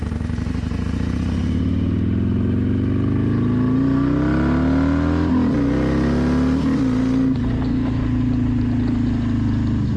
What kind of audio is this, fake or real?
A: real